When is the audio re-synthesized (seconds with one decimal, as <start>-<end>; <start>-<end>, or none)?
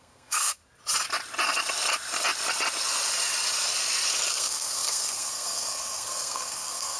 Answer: 0.0-0.6; 4.3-7.0